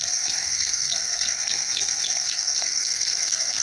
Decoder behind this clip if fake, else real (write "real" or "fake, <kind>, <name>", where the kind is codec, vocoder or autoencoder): fake, codec, SNAC